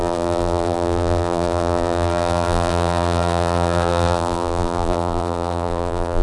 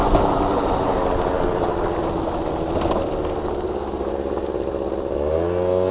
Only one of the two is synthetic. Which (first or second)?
first